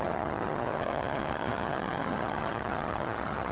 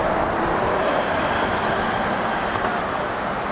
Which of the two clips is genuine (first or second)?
second